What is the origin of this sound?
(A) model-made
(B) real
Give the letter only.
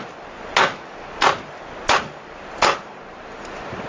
B